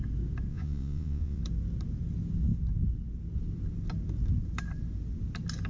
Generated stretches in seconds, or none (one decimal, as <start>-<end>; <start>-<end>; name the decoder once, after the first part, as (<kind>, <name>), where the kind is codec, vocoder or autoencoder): 0.5-1.4 (vocoder, Vocos)